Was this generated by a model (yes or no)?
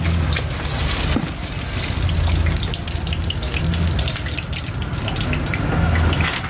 no